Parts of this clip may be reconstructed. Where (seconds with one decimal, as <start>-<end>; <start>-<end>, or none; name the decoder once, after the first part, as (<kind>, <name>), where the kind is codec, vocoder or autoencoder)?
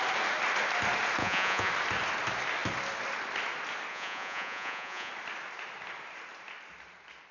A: 1.2-1.7 (vocoder, Vocos); 3.9-5.1